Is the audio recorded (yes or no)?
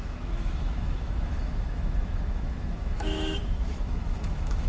no